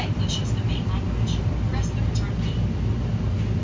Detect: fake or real real